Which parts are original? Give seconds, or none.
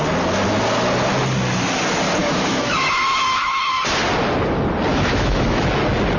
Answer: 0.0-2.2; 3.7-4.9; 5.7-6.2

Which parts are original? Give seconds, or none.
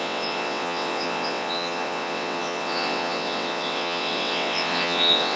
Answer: none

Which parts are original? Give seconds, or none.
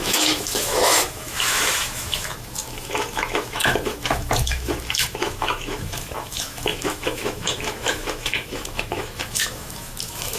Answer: none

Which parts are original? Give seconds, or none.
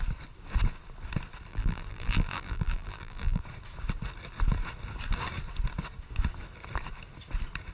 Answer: 0.0-1.5; 3.4-7.7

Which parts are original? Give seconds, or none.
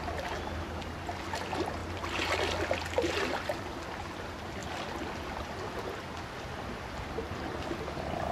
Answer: 0.0-8.3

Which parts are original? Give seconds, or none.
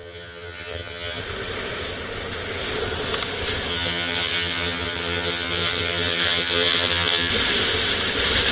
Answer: 1.2-3.7; 7.3-8.5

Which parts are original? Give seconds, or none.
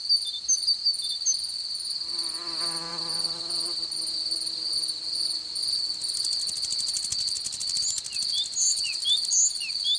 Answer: 0.0-10.0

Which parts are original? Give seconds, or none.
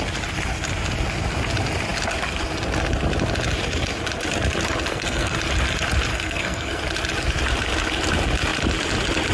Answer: 0.0-4.9; 5.4-6.1; 6.8-9.3